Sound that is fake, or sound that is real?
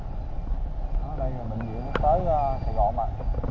real